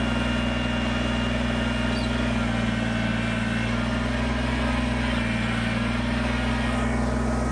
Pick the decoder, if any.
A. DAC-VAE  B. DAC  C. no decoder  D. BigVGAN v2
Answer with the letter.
C